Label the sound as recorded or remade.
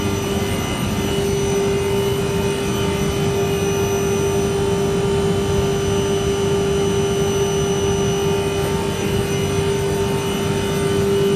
recorded